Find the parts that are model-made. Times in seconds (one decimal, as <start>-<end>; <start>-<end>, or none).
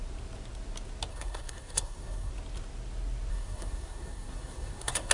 1.1-2.3; 3.3-5.1